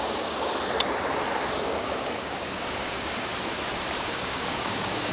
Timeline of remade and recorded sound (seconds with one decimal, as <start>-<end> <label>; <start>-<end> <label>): 0.0-0.5 remade; 0.5-1.6 recorded; 1.6-3.3 remade; 3.3-4.0 recorded; 4.0-5.1 remade